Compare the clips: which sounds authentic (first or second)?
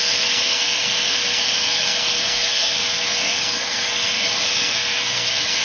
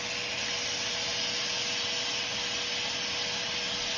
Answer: second